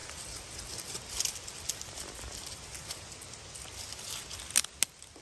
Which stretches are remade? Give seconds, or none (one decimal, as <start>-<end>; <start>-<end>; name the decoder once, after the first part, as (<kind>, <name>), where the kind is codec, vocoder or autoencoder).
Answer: none